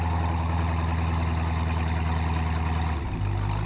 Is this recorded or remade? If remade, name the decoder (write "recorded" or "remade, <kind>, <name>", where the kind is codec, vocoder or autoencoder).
recorded